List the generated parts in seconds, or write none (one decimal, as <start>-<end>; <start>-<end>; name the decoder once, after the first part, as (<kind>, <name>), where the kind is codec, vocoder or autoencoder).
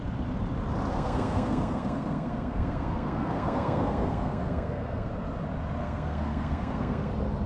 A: 0.9-5.1 (codec, SNAC); 5.8-7.1